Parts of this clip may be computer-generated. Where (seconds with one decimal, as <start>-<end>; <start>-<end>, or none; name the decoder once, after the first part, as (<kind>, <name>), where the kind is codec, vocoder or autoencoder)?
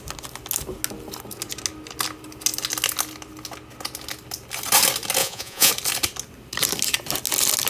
5.2-5.7 (vocoder, Vocos)